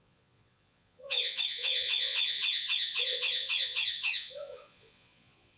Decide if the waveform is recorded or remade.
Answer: remade